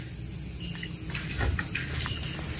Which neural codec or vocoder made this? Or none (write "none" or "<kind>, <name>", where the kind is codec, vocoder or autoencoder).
none